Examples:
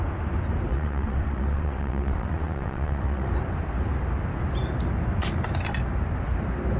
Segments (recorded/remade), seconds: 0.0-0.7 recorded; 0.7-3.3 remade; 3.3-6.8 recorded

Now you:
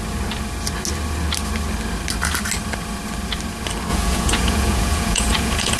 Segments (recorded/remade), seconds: 0.0-3.9 recorded; 3.9-5.8 remade

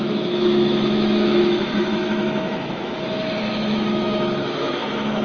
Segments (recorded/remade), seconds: 0.0-3.0 remade; 3.0-3.5 recorded; 3.5-5.2 remade

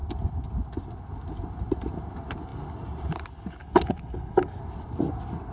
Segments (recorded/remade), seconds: 0.0-3.6 recorded; 3.6-4.6 remade; 4.6-5.5 recorded